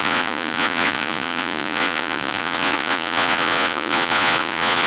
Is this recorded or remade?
remade